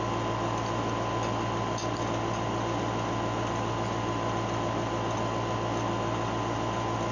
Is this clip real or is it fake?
real